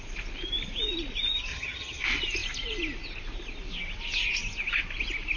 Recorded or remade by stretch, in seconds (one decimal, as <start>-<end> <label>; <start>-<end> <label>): 0.0-1.5 recorded; 1.5-2.0 remade; 2.0-5.4 recorded